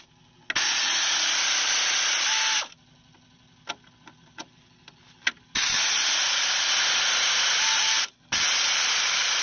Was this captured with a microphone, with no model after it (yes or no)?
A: yes